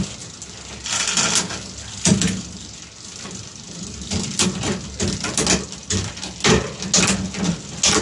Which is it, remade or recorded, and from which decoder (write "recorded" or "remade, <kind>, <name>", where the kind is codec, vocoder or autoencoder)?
recorded